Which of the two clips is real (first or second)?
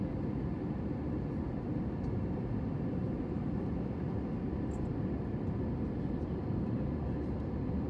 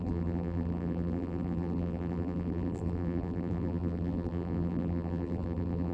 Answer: first